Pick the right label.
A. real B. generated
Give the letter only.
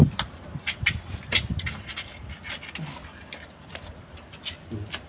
A